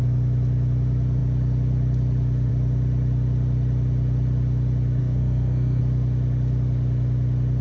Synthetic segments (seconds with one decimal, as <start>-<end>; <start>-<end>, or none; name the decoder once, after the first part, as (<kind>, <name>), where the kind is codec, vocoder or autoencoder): 5.0-5.8 (codec, SNAC)